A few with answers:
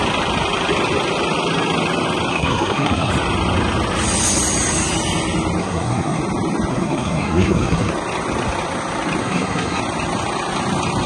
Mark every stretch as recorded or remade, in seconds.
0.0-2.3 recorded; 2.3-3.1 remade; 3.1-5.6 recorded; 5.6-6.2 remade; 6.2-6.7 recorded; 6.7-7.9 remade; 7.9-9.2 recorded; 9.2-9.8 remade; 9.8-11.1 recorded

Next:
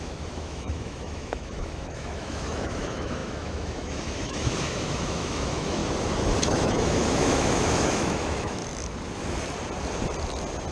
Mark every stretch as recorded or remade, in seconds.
0.0-5.8 remade; 5.8-6.4 recorded; 6.4-8.6 remade; 8.6-10.7 recorded

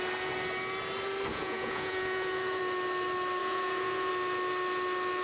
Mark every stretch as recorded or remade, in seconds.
0.0-1.3 recorded; 1.3-2.6 remade; 2.6-3.4 recorded; 3.4-4.1 remade; 4.1-5.2 recorded

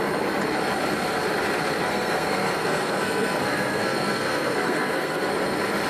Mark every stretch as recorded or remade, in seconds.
0.0-1.8 recorded; 1.8-5.3 remade; 5.3-5.9 recorded

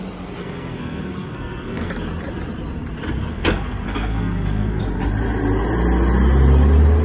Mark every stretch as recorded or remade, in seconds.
0.0-0.4 recorded; 0.4-1.9 remade; 1.9-3.3 recorded; 3.3-4.8 remade; 4.8-7.0 recorded

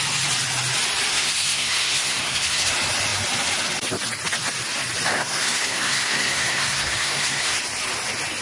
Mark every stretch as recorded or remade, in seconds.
0.0-1.1 recorded; 1.1-2.7 remade; 2.7-5.1 recorded; 5.1-7.6 remade; 7.6-8.4 recorded

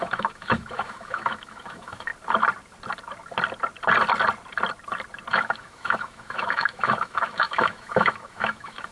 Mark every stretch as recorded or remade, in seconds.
0.0-2.1 remade; 2.1-5.3 recorded; 5.3-8.9 remade

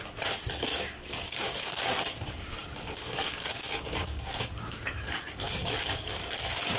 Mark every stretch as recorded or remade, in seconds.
0.0-0.7 recorded; 0.7-1.8 remade; 1.8-2.6 recorded; 2.6-6.3 remade; 6.3-6.8 recorded